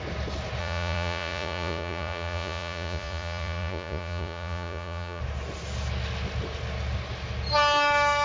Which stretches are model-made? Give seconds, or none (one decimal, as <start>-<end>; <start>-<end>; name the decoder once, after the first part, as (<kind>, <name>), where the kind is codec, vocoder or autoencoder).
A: 0.6-5.2 (vocoder, Vocos)